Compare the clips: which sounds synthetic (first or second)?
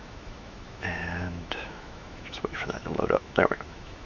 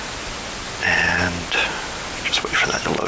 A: first